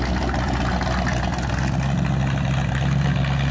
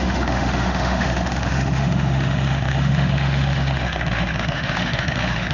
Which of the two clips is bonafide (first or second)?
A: first